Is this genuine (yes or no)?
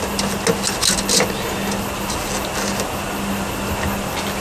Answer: yes